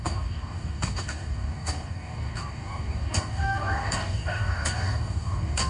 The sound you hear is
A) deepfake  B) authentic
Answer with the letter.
A